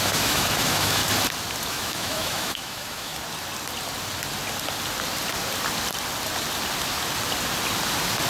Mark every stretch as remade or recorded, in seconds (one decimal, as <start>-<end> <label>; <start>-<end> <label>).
0.0-1.0 remade; 1.0-1.7 recorded; 1.7-3.1 remade; 3.1-8.3 recorded